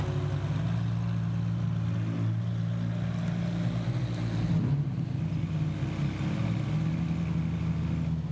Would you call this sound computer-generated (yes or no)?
no